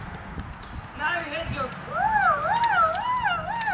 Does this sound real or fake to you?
real